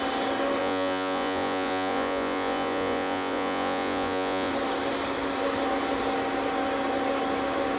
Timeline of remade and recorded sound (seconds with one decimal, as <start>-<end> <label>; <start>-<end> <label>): 0.0-0.6 recorded; 0.6-4.5 remade; 4.5-7.8 recorded